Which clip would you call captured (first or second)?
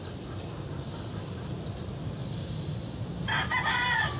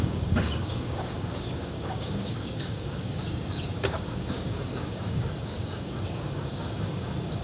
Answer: first